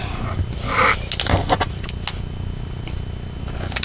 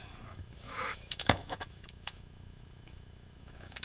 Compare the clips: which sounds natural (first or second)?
first